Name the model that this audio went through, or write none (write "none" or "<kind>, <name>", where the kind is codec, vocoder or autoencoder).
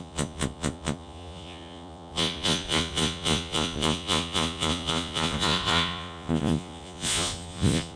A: vocoder, Vocos